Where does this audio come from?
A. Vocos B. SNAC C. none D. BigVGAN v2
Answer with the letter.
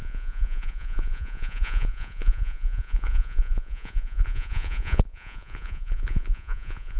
A